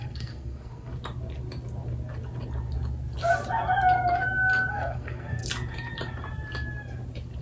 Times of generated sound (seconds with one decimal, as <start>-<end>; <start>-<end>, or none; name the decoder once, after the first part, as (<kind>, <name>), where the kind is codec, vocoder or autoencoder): 0.0-0.9 (codec, SNAC); 4.7-5.4